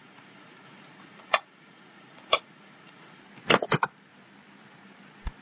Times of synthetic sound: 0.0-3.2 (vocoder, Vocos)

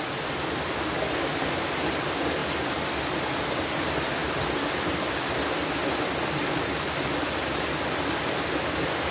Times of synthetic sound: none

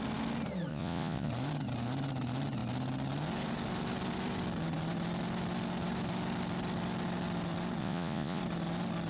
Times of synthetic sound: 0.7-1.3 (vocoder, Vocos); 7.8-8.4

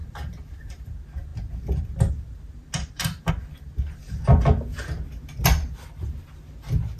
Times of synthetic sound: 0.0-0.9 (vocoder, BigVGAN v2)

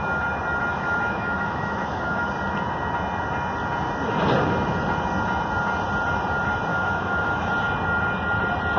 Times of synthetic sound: 0.7-2.3 (autoencoder, DAC-VAE); 6.7-7.5

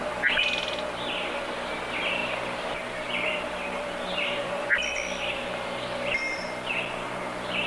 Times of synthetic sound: none